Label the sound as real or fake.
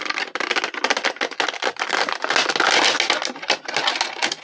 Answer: real